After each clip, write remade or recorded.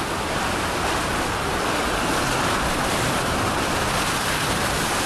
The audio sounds recorded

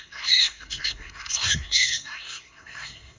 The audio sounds remade